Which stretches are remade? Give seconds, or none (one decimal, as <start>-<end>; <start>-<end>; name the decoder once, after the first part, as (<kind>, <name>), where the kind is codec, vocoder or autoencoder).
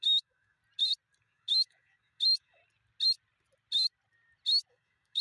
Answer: 0.0-0.6 (autoencoder, DAC-VAE); 1.2-2.6; 4.7-5.2